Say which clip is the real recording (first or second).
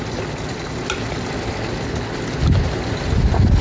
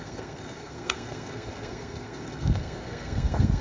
first